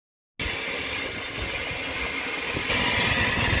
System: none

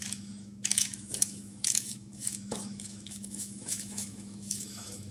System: autoencoder, DAC-VAE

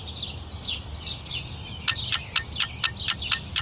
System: none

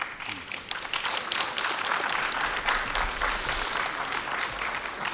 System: none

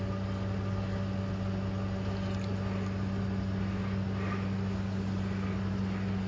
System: none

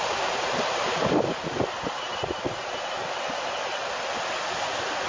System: none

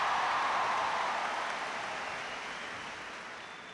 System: none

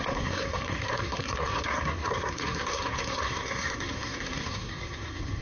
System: codec, SNAC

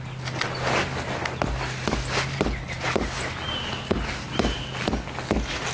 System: none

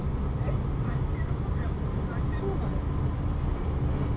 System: none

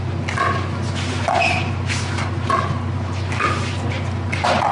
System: none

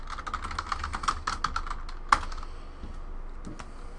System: none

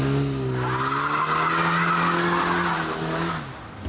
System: none